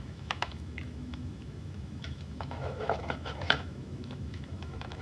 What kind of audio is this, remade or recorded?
remade